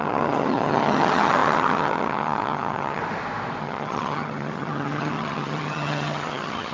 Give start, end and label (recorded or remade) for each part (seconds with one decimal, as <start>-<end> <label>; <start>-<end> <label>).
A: 0.0-3.0 remade; 3.0-3.6 recorded; 3.6-6.7 remade